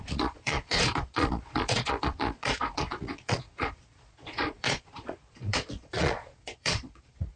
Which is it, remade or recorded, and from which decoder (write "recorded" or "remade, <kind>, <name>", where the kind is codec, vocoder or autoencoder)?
remade, vocoder, Vocos